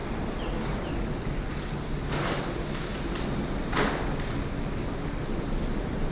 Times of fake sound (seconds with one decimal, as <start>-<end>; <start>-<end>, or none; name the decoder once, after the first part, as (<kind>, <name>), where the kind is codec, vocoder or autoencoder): none